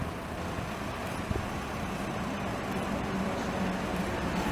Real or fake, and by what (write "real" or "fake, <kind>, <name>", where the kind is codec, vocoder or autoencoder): real